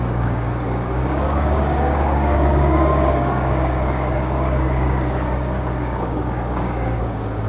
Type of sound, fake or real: fake